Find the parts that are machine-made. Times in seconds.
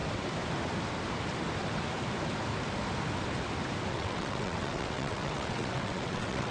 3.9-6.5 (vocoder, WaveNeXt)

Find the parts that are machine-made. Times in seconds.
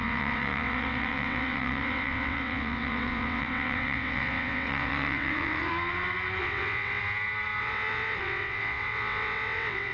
0.0-5.7 (vocoder, WaveNeXt); 6.4-7.0; 7.6-9.9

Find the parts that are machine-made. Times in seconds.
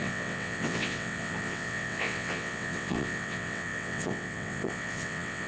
0.0-5.5 (vocoder, WaveNeXt)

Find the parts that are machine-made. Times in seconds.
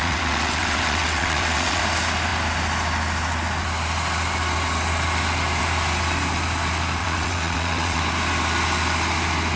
0.0-1.8 (vocoder, WaveNeXt); 7.0-8.0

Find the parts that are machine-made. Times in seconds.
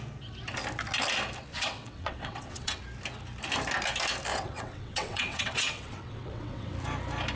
1.5-2.8 (vocoder, WaveNeXt); 4.3-6.7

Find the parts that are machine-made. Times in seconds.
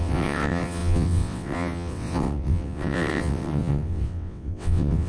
0.0-5.1 (vocoder, WaveNeXt)